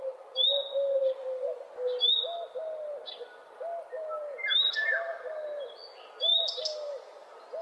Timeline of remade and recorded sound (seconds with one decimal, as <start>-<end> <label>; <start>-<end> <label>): 0.0-7.6 recorded